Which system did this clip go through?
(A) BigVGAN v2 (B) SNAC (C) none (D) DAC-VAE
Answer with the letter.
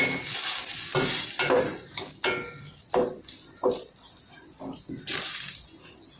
C